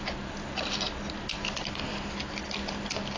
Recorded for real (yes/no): yes